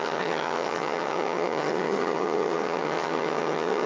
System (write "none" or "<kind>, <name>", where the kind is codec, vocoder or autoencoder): vocoder, HiFi-GAN